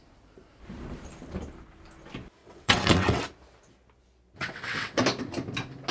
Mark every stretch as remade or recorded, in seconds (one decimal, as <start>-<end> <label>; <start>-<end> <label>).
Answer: 0.0-2.4 recorded; 2.4-3.2 remade; 3.2-4.4 recorded; 4.4-5.0 remade; 5.0-5.9 recorded